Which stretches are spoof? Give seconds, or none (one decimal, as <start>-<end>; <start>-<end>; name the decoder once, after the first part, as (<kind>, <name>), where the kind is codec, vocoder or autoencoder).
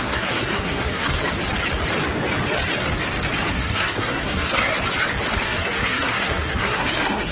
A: 0.0-1.2 (codec, SNAC); 3.5-4.7; 5.3-7.3